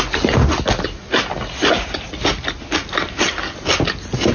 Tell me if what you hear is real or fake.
real